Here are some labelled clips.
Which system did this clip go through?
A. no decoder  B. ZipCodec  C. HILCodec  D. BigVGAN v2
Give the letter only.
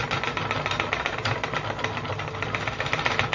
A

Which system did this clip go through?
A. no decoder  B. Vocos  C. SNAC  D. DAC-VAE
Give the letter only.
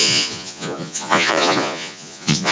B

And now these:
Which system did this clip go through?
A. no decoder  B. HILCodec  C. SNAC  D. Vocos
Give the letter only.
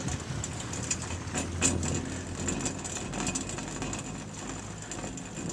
A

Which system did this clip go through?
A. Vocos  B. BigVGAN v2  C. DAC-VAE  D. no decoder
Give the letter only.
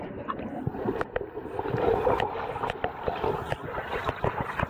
D